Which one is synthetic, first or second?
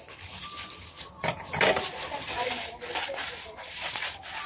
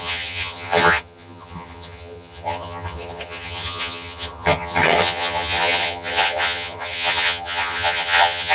second